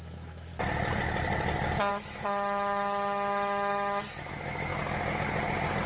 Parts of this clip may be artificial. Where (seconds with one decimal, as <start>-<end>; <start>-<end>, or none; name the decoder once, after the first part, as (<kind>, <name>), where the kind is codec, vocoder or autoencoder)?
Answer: 0.0-0.5 (autoencoder, DAC-VAE); 1.9-4.7